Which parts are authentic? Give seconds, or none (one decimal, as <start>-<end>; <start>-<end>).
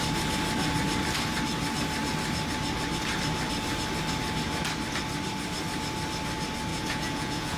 0.0-6.7